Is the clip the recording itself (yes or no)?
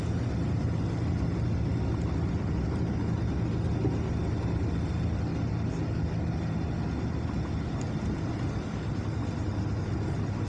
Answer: yes